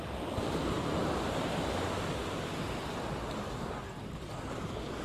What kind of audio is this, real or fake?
real